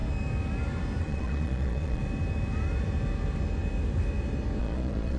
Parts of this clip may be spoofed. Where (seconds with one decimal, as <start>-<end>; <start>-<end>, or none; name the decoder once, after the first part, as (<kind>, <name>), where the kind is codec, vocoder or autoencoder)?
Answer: 1.0-2.0 (vocoder, Vocos); 4.6-5.2